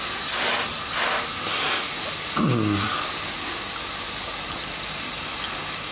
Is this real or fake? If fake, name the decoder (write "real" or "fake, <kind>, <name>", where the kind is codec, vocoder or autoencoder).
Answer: real